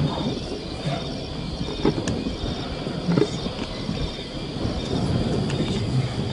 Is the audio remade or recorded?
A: recorded